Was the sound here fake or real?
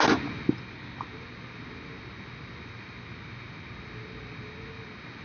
real